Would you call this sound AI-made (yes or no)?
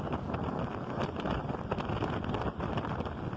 no